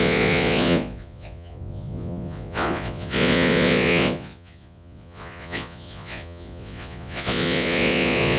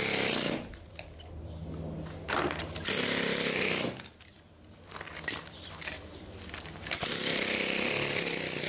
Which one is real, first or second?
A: second